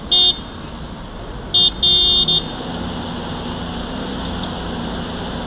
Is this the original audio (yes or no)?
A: yes